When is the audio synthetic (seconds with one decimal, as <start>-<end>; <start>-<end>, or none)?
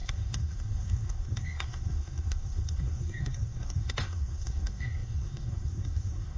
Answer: 0.0-6.4